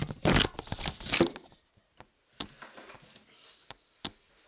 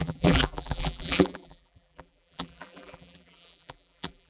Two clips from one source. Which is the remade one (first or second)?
second